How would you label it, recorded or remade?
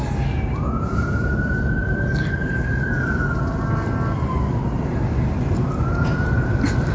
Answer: recorded